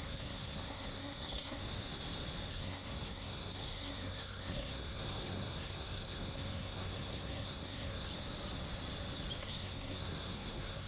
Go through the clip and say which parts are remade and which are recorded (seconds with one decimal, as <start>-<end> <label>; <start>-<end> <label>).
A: 0.0-1.6 remade; 1.6-2.5 recorded; 2.5-8.1 remade; 8.1-9.4 recorded; 9.4-10.9 remade